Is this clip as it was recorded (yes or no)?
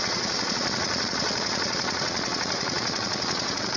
no